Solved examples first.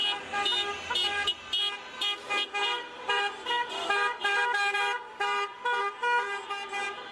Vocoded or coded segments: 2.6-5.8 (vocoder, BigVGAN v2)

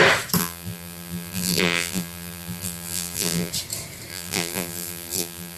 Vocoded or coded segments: 0.4-3.5 (vocoder, BigVGAN v2); 4.1-5.6

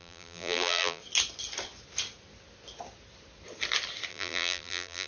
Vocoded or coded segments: 0.0-1.0 (vocoder, BigVGAN v2); 4.1-5.1

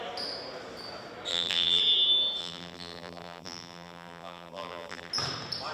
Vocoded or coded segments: 1.3-1.8 (vocoder, BigVGAN v2); 2.4-5.1